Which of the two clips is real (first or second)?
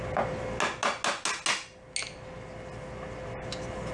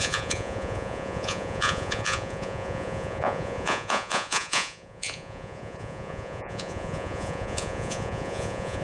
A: first